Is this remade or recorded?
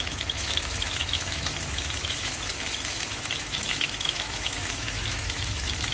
remade